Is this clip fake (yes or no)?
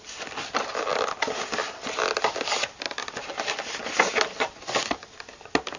no